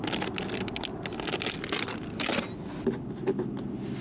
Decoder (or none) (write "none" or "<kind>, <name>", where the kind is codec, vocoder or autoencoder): none